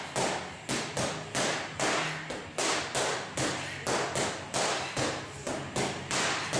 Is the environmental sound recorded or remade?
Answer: recorded